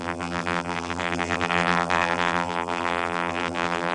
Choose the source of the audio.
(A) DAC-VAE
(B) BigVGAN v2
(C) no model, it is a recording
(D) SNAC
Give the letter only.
B